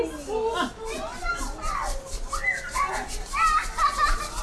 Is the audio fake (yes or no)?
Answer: no